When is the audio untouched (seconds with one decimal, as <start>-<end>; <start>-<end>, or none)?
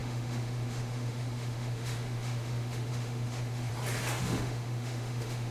3.7-4.2